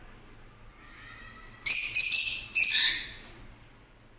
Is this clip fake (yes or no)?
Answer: no